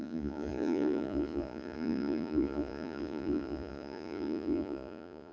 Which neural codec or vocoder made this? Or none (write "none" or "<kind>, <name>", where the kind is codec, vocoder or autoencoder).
vocoder, Vocos